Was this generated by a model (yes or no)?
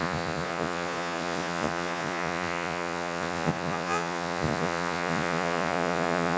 yes